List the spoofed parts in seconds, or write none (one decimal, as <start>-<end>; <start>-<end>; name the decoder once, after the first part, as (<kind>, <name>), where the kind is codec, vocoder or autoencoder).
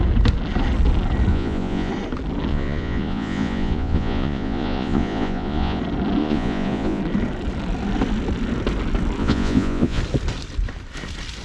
1.3-1.9 (vocoder, Vocos); 2.5-5.8; 6.2-7.0; 9.2-10.0